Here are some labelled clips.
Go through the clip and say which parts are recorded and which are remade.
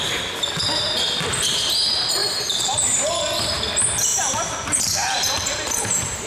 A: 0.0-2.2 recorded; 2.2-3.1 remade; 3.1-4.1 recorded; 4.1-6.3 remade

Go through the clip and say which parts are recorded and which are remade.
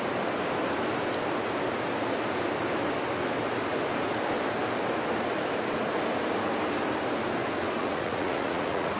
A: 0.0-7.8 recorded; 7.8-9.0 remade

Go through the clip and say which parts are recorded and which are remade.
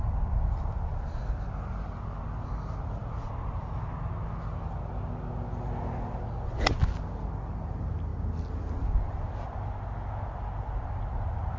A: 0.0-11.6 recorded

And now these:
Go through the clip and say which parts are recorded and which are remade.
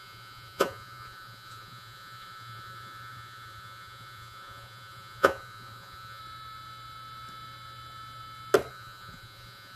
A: 0.0-6.2 remade; 6.2-8.7 recorded; 8.7-9.8 remade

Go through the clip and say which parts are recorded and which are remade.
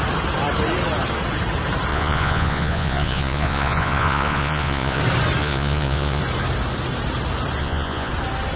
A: 0.0-1.9 recorded; 1.9-5.0 remade; 5.0-5.4 recorded; 5.4-6.2 remade; 6.2-7.6 recorded; 7.6-8.1 remade; 8.1-8.6 recorded